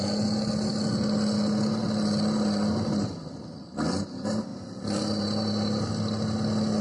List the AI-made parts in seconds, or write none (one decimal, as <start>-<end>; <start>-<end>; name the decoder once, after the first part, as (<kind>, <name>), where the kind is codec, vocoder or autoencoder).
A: 4.5-5.9 (vocoder, BigVGAN v2)